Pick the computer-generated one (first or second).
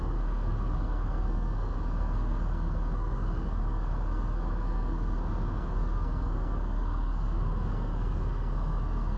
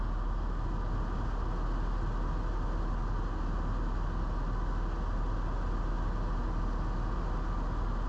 first